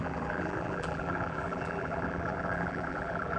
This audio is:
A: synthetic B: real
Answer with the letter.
A